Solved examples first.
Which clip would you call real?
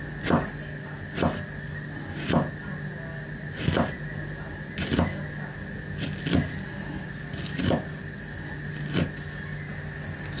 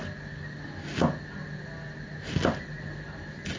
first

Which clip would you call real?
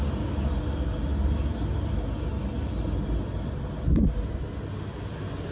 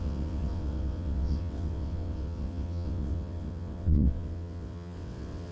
first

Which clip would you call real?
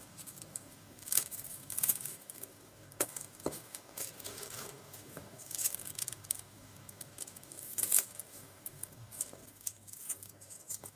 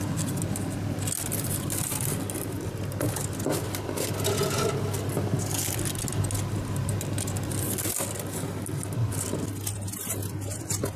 second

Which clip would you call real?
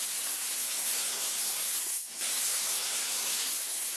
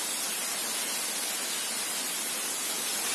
second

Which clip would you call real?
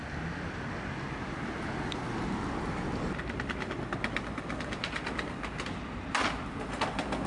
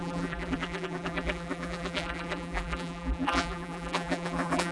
first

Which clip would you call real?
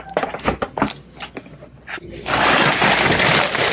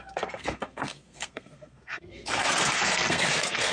first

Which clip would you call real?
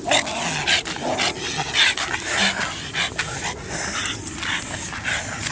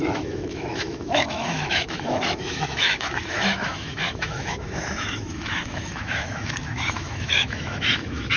first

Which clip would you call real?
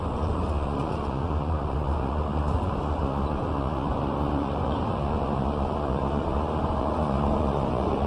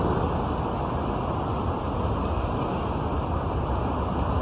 second